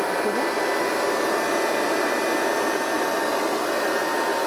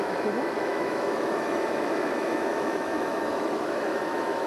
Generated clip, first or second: second